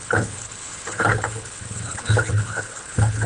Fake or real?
fake